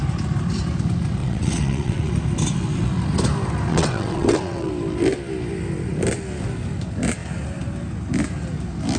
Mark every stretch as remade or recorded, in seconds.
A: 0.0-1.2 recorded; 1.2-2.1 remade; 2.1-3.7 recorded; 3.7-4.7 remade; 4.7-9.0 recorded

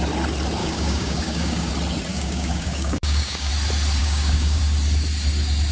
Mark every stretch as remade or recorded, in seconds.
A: 0.0-0.6 recorded; 0.6-1.7 remade; 1.7-2.1 recorded; 2.1-3.5 remade; 3.5-4.0 recorded; 4.0-4.6 remade; 4.6-5.7 recorded

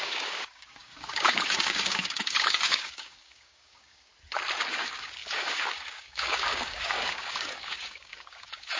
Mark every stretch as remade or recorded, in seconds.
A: 0.0-4.1 remade; 4.1-4.7 recorded; 4.7-8.8 remade

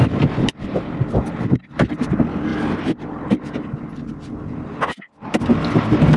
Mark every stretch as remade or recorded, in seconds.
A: 0.0-6.2 recorded

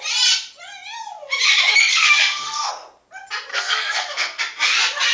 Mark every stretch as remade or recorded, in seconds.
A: 0.0-1.9 recorded; 1.9-2.7 remade; 2.7-3.5 recorded; 3.5-4.4 remade; 4.4-5.1 recorded

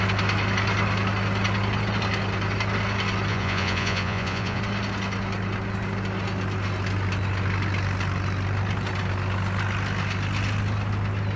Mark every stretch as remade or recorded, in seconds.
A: 0.0-3.3 recorded; 3.3-4.6 remade; 4.6-11.4 recorded